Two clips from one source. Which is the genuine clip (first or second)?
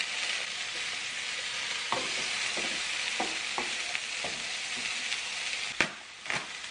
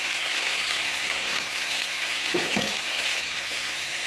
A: first